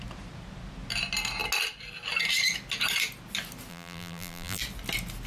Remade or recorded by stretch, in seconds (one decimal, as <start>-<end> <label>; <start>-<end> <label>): 0.0-3.7 recorded; 3.7-4.6 remade; 4.6-5.3 recorded